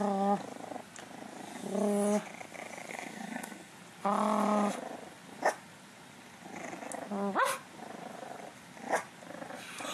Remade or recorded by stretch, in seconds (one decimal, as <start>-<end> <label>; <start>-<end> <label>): 0.0-2.9 recorded; 2.9-3.7 remade; 3.7-9.9 recorded